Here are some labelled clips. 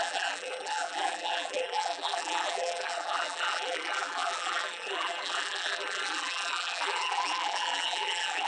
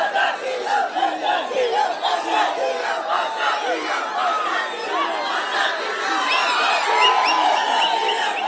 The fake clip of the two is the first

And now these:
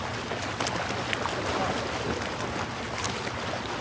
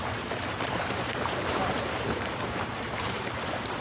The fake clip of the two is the second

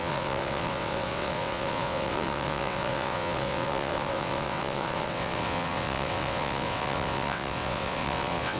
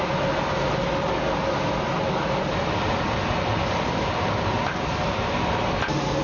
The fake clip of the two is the first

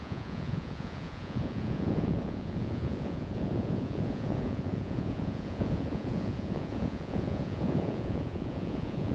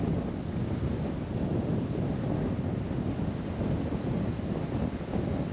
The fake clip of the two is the first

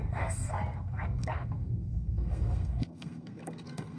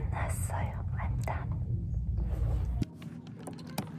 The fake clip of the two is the first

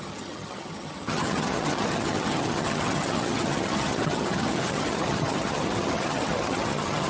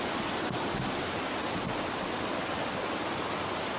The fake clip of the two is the first